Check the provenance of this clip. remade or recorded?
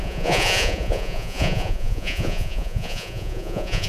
remade